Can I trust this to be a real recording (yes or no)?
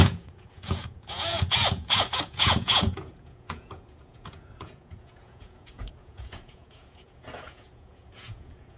no